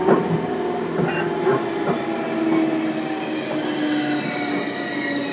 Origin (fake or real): real